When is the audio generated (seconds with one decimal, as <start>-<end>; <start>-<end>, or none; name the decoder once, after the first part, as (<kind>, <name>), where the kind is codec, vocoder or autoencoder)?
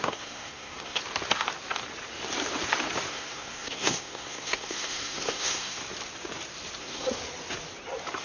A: 0.0-1.0 (codec, SNAC); 3.1-5.8; 6.8-7.2